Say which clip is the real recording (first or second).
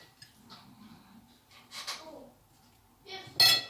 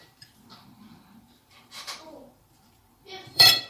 first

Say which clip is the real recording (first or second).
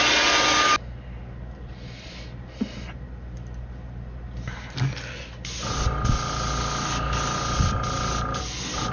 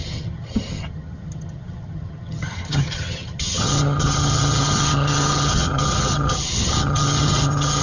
first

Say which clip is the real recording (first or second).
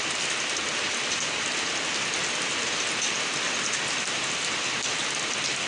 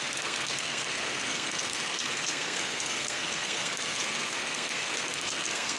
first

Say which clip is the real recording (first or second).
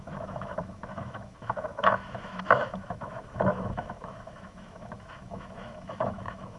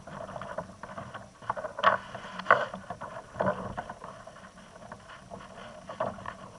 second